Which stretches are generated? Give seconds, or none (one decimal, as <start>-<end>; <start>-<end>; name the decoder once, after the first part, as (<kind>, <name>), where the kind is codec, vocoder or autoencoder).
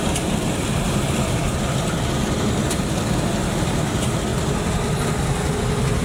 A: 0.0-1.4 (vocoder, BigVGAN v2); 2.4-4.3